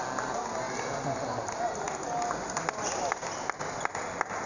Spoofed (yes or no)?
no